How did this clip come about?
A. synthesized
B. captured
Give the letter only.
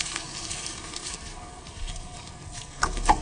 A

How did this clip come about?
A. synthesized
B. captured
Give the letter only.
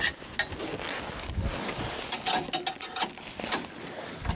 B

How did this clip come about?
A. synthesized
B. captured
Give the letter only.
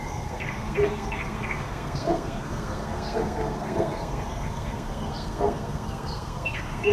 A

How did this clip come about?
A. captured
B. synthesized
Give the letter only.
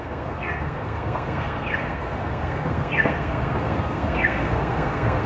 B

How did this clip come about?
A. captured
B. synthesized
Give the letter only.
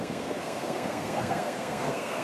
B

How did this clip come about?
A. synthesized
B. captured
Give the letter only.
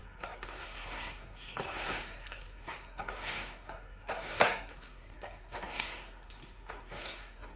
A